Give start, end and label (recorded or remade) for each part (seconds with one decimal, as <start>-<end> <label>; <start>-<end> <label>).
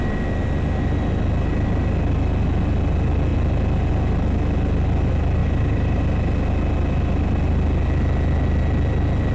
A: 0.0-5.4 recorded; 5.4-6.0 remade; 6.0-9.3 recorded